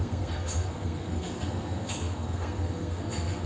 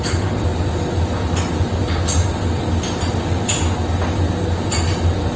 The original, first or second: second